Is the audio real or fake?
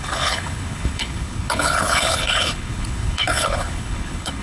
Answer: fake